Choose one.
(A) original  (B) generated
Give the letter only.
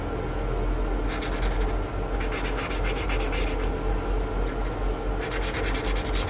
A